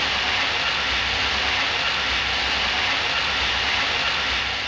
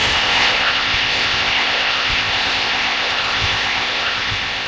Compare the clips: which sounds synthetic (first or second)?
second